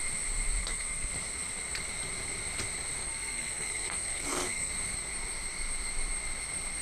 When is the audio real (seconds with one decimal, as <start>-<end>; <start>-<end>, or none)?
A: 0.0-0.6; 1.1-3.0; 4.7-6.8